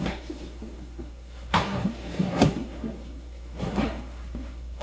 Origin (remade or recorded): remade